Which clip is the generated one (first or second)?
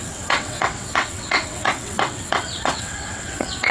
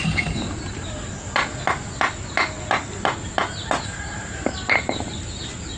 first